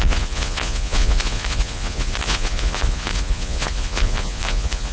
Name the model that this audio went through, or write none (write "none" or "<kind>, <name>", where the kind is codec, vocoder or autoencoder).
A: vocoder, Vocos